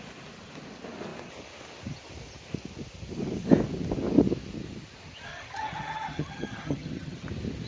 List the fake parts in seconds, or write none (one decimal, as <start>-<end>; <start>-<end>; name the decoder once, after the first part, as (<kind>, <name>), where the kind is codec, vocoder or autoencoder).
5.3-7.3 (vocoder, HiFi-GAN)